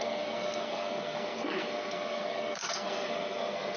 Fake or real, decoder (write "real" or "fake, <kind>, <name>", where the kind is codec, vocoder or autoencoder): fake, codec, SNAC